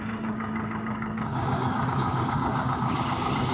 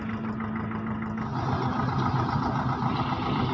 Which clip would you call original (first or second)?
second